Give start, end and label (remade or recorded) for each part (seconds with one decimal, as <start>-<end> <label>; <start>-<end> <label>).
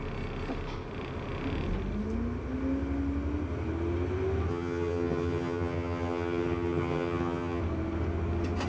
0.0-4.5 recorded; 4.5-7.6 remade; 7.6-8.7 recorded